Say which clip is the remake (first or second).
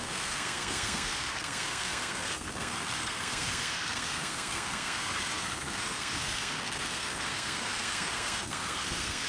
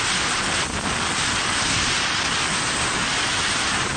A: first